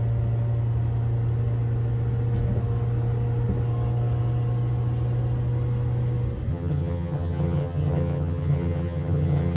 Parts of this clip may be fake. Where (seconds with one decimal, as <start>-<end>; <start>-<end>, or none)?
6.5-9.6